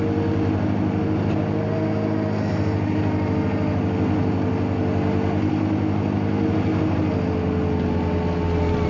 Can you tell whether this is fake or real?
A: real